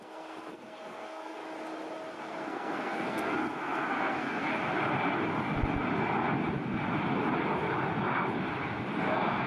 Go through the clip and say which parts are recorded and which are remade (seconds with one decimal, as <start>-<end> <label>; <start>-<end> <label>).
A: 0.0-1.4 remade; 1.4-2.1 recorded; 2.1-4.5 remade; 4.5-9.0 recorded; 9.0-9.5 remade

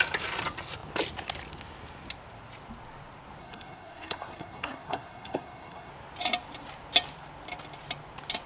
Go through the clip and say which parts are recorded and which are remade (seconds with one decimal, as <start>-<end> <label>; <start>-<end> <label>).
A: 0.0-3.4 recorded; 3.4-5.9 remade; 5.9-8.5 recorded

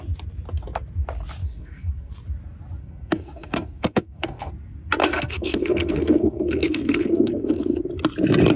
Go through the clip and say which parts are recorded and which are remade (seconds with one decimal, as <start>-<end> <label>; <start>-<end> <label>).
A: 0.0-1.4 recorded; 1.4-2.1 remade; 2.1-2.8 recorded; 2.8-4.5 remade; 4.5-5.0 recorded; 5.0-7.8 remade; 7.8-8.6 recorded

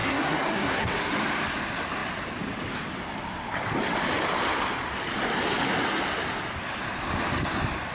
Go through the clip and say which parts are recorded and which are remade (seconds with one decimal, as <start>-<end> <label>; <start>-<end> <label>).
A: 0.0-1.1 remade; 1.1-7.9 recorded

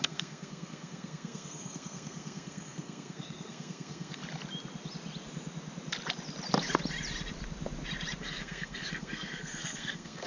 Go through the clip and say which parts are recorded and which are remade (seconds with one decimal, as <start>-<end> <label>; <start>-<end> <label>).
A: 0.0-4.2 remade; 4.2-8.2 recorded; 8.2-10.3 remade